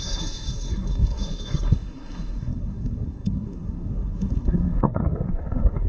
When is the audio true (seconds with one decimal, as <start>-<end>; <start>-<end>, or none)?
none